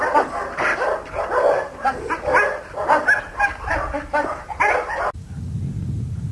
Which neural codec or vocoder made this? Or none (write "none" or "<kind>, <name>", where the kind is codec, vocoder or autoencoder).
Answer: none